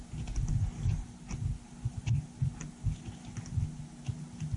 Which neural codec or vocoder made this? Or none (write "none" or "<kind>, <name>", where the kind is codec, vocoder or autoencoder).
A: none